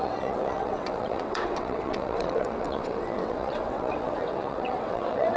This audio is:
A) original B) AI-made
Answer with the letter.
B